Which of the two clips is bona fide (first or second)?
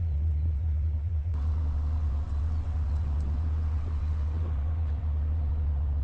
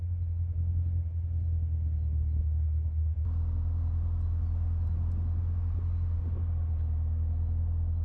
second